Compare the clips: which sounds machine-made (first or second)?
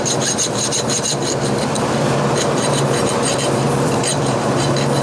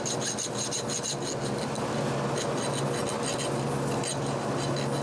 first